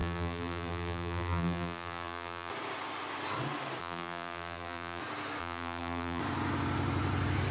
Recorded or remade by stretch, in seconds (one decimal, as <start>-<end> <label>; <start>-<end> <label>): 0.0-2.5 remade; 2.5-3.8 recorded; 3.8-5.0 remade; 5.0-5.4 recorded; 5.4-6.2 remade; 6.2-7.5 recorded